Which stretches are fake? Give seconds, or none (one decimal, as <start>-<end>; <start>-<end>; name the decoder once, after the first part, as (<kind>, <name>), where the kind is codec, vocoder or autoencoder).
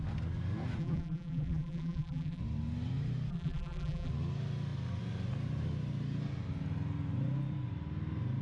0.8-2.4 (vocoder, BigVGAN v2); 3.3-4.1